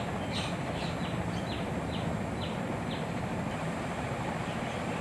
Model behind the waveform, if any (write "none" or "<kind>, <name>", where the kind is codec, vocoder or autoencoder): none